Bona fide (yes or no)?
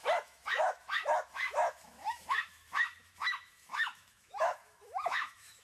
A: no